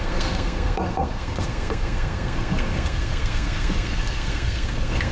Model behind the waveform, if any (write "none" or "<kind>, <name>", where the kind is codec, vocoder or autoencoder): codec, SNAC